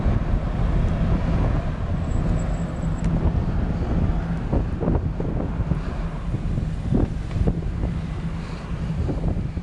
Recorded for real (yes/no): yes